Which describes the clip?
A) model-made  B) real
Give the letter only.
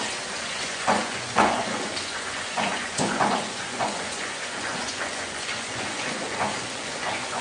A